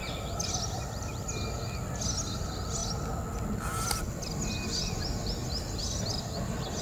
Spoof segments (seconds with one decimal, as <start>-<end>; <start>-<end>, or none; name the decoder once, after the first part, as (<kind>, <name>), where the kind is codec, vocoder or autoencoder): none